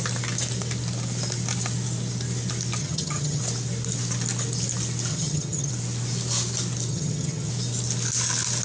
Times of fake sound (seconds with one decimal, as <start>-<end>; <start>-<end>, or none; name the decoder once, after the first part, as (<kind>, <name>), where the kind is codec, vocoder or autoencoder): 2.8-3.4 (vocoder, HiFi-GAN); 5.1-5.7; 6.9-7.5